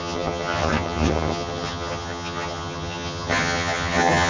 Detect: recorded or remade remade